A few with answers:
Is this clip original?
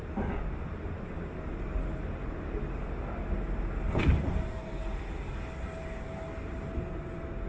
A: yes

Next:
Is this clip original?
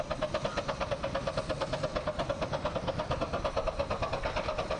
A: yes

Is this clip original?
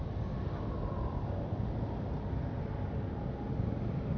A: yes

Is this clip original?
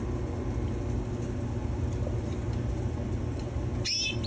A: yes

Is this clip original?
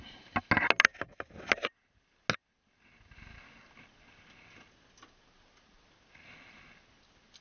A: yes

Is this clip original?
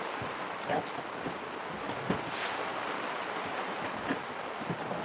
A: yes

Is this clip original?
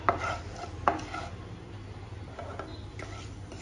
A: yes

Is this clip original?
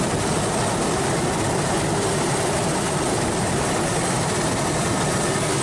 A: yes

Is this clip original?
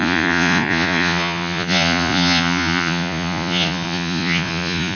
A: no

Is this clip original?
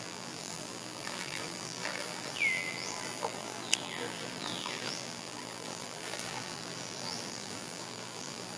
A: no